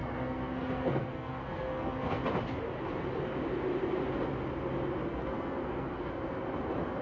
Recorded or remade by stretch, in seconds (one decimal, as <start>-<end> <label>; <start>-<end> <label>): 0.0-2.2 remade; 2.2-5.1 recorded; 5.1-6.1 remade; 6.1-7.0 recorded